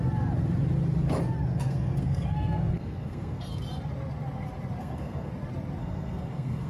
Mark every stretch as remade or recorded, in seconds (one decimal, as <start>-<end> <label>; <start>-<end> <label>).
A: 0.0-1.5 recorded; 1.5-3.6 remade; 3.6-4.8 recorded; 4.8-5.3 remade; 5.3-5.8 recorded; 5.8-6.7 remade